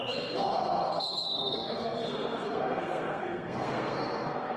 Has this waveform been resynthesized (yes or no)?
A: yes